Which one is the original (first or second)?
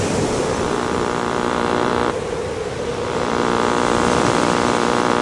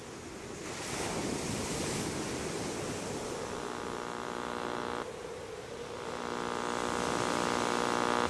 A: second